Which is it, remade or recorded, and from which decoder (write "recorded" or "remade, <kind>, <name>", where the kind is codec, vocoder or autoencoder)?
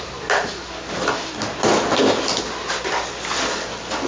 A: recorded